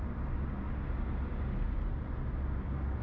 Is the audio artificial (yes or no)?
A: no